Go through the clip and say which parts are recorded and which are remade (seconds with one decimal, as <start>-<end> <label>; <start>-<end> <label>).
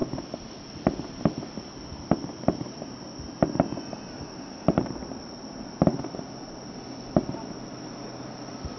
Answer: 0.0-8.8 recorded